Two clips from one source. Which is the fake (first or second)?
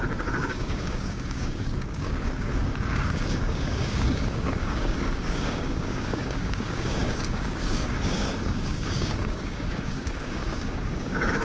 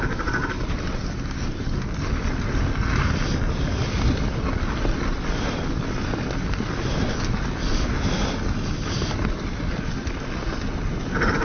first